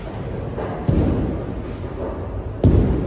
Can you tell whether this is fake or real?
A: real